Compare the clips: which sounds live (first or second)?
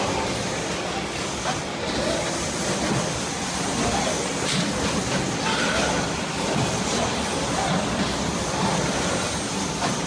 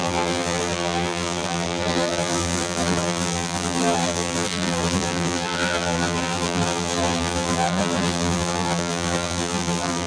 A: first